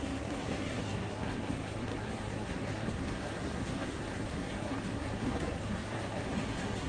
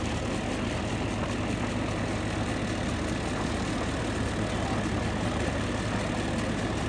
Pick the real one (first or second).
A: second